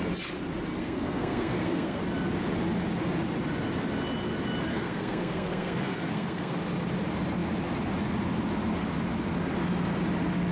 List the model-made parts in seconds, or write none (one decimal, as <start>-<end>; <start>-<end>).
0.8-2.0; 4.7-6.6